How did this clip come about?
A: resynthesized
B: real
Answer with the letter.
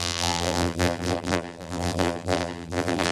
A